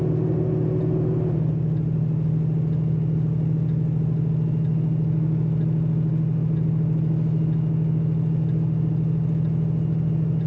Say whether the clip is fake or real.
real